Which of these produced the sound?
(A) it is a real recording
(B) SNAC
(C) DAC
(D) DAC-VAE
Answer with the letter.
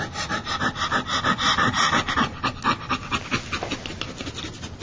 A